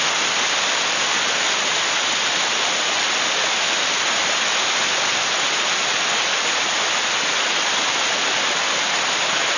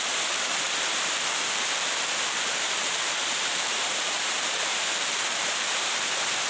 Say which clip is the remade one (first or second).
second